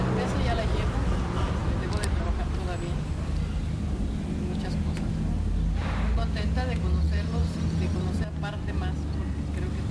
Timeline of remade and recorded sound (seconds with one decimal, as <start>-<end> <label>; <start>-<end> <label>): 0.0-9.9 recorded